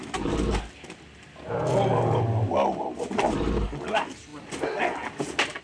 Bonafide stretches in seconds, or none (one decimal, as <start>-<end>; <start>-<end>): 0.0-5.6